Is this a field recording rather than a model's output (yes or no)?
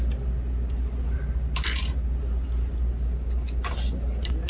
yes